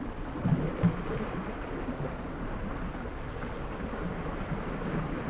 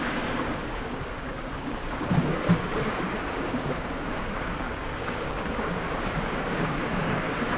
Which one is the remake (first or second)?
second